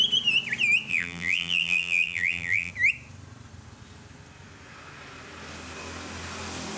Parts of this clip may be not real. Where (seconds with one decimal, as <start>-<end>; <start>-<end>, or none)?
0.9-2.7